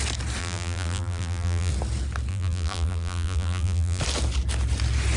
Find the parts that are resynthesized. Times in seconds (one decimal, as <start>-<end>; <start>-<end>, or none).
0.4-1.7; 2.3-4.0